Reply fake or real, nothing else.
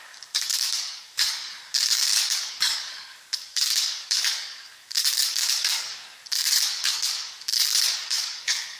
fake